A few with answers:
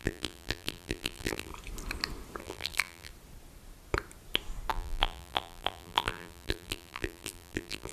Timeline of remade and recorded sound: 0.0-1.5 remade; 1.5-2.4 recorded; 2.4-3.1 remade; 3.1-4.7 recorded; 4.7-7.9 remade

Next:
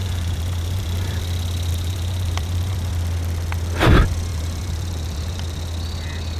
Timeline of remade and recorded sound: 0.0-1.2 remade; 1.2-1.7 recorded; 1.7-2.9 remade; 2.9-4.3 recorded; 4.3-5.4 remade; 5.4-6.4 recorded

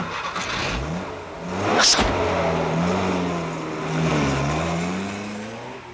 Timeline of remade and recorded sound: 0.0-5.9 recorded

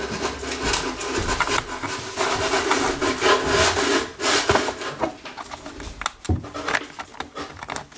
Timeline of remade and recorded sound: 0.0-8.0 recorded

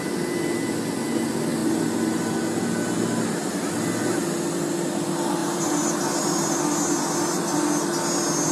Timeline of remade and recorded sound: 0.0-1.6 recorded; 1.6-2.3 remade; 2.3-5.4 recorded; 5.4-6.6 remade; 6.6-8.5 recorded